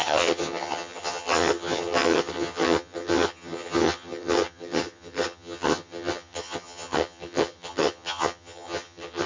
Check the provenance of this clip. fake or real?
fake